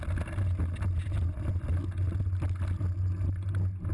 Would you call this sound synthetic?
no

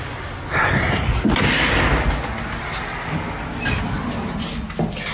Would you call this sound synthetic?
no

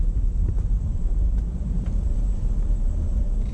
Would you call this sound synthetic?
yes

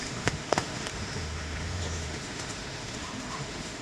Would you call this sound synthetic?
yes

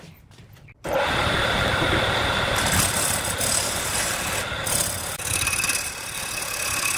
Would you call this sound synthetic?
no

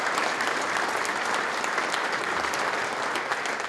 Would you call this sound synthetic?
yes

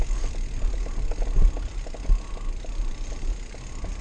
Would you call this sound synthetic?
no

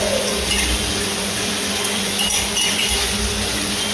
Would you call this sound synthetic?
yes